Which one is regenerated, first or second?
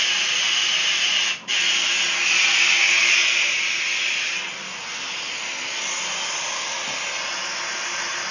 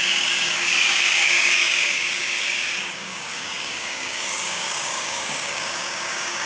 second